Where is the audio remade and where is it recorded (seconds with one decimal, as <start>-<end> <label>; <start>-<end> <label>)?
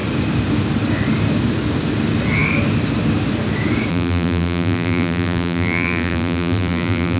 0.0-3.9 recorded; 3.9-7.2 remade